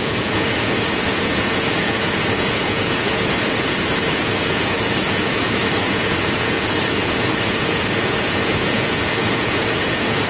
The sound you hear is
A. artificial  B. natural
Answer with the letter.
A